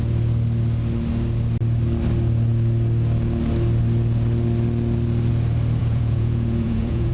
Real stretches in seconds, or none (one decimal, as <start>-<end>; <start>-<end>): 0.0-5.8